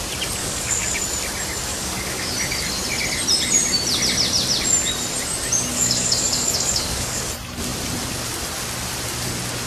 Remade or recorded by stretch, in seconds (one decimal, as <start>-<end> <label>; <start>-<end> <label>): 0.0-0.4 recorded; 0.4-1.0 remade; 1.0-1.7 recorded; 1.7-2.3 remade; 2.3-5.7 recorded; 5.7-7.3 remade; 7.3-9.7 recorded